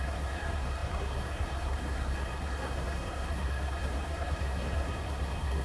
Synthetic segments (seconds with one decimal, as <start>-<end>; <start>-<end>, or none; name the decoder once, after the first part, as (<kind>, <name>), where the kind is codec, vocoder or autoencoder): 0.0-5.6 (codec, SNAC)